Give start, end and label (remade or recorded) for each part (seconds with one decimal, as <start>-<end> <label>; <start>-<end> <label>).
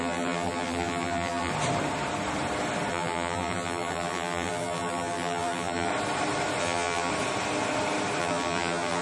0.0-1.5 remade; 1.5-2.9 recorded; 2.9-5.9 remade; 5.9-6.6 recorded; 6.6-7.1 remade; 7.1-8.2 recorded; 8.2-9.0 remade